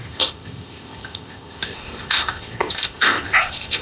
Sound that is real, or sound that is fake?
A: fake